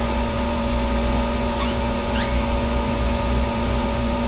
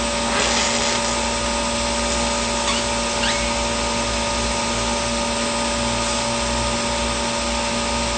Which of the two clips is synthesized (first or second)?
first